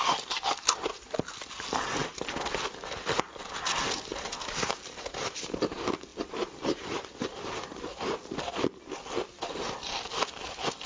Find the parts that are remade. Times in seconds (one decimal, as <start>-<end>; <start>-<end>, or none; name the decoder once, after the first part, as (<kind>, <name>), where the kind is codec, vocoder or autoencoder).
2.0-2.5 (vocoder, BigVGAN v2); 6.1-10.3